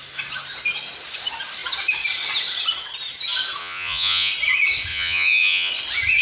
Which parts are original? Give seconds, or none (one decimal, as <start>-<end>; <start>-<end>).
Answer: 0.0-3.6; 4.3-4.9; 5.7-6.2